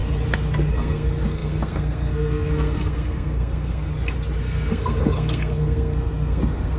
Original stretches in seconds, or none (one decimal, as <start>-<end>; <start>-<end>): 0.0-0.7; 3.9-4.4